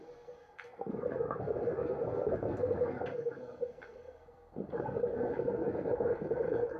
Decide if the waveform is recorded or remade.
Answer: remade